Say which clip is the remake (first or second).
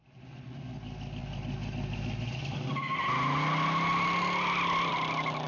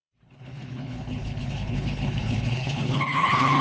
second